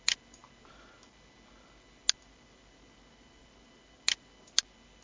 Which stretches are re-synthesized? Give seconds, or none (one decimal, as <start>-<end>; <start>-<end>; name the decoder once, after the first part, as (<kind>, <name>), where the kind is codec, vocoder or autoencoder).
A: none